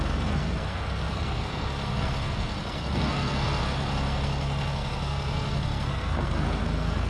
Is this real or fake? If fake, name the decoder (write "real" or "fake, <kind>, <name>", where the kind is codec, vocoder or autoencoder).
fake, codec, SNAC